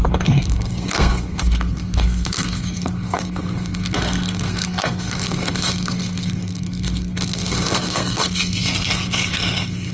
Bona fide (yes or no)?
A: no